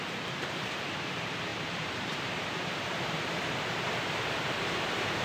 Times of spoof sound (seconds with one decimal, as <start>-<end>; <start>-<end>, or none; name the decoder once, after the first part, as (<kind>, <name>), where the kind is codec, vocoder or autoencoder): 0.0-5.2 (vocoder, BigVGAN v2)